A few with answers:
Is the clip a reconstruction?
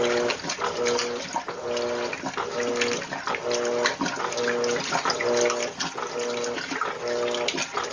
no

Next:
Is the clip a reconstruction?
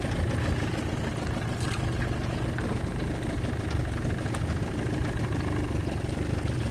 no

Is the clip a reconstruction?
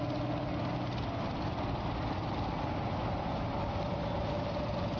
no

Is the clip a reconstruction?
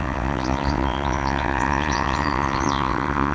yes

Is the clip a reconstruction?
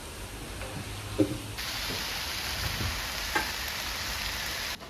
no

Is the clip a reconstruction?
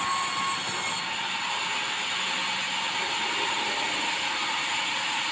no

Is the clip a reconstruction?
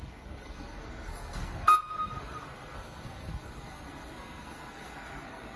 yes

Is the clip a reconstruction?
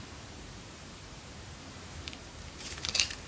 yes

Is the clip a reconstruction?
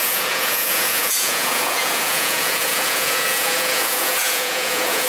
yes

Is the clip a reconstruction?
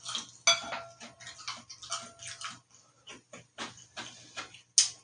no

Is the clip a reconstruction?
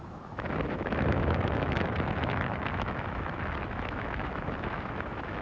yes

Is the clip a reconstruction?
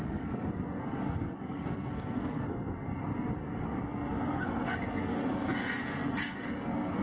yes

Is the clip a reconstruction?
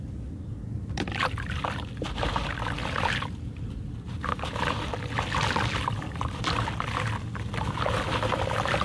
no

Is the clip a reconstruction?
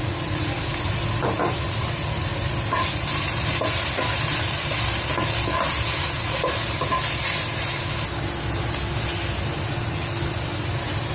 no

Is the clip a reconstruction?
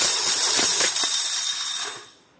no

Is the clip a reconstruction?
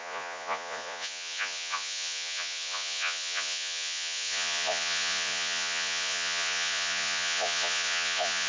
yes